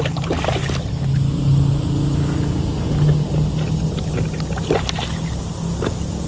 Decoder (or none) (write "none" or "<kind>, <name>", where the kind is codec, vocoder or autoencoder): none